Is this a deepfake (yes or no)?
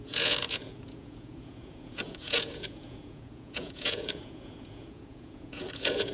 yes